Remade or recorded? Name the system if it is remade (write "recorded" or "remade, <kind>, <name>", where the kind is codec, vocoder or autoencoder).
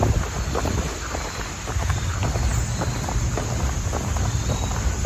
recorded